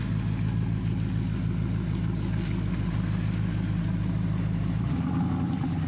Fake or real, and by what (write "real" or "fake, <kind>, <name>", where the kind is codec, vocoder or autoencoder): real